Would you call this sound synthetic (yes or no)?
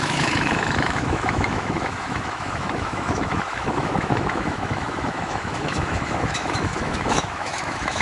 yes